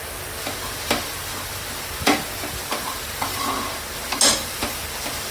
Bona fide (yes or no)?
yes